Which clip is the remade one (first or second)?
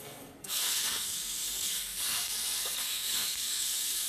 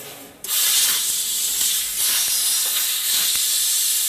first